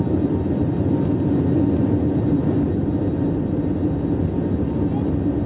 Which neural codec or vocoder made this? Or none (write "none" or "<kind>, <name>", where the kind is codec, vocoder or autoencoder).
none